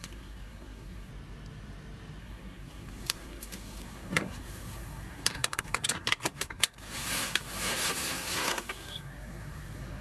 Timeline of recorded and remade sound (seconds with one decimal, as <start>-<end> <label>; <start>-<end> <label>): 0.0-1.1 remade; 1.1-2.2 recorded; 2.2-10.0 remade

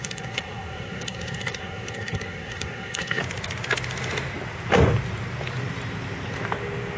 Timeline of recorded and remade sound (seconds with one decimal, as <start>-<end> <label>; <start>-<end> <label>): 0.0-3.2 remade; 3.2-7.0 recorded

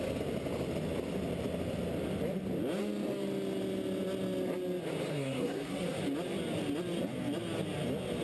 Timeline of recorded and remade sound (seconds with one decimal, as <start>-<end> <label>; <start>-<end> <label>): 0.0-5.1 recorded; 5.1-6.0 remade; 6.0-8.2 recorded

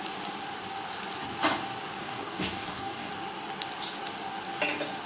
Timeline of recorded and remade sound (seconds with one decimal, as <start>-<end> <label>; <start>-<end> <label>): 0.0-2.0 recorded; 2.0-3.1 remade; 3.1-5.1 recorded

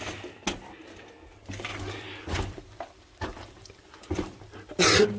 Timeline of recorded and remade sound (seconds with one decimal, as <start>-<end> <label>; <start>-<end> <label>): 0.0-1.7 recorded; 1.7-4.8 remade; 4.8-5.2 recorded

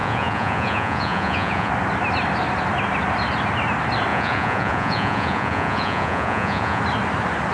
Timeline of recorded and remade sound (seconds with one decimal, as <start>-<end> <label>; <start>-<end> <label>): 0.0-1.7 remade; 1.7-4.1 recorded; 4.1-6.8 remade; 6.8-7.5 recorded

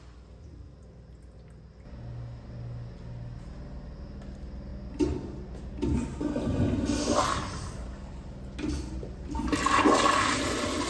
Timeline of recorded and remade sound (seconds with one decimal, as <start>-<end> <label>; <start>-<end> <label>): 0.0-10.9 recorded

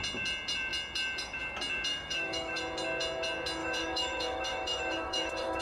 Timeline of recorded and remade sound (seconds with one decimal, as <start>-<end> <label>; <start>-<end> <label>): 0.0-1.9 recorded; 1.9-2.6 remade; 2.6-3.6 recorded; 3.6-5.6 remade